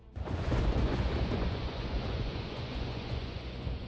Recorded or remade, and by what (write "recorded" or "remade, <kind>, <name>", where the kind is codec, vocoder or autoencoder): remade, vocoder, Vocos